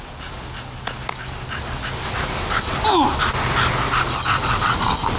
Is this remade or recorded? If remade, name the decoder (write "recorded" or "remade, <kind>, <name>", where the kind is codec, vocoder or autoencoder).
recorded